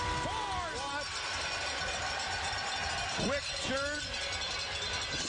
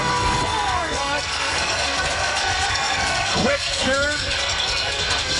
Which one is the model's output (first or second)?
second